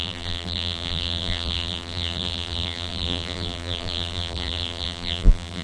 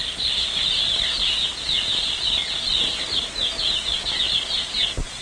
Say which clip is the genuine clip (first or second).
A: second